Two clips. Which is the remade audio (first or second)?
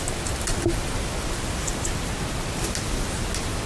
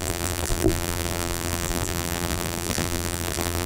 second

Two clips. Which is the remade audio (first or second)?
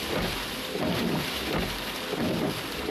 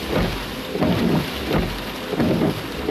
first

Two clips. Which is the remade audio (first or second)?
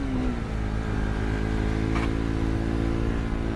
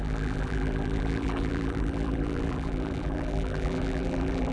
second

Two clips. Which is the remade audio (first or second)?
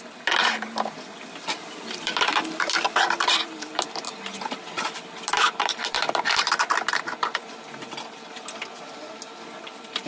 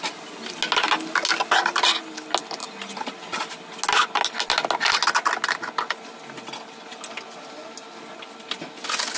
first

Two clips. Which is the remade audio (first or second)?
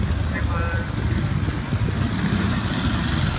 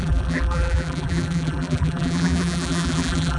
second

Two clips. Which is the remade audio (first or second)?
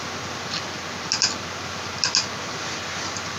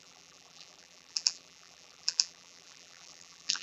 second